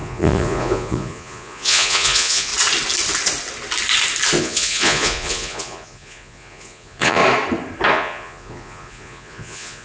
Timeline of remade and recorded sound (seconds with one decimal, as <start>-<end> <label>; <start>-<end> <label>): 0.0-2.5 remade; 2.5-4.4 recorded; 4.4-7.2 remade; 7.2-7.9 recorded; 7.9-9.8 remade